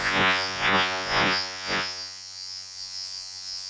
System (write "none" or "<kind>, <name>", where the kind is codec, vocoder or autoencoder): vocoder, Vocos